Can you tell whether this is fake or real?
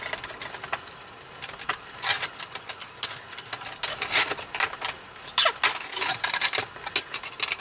real